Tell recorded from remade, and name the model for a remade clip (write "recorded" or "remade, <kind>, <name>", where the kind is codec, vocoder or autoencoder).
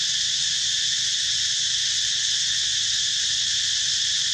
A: recorded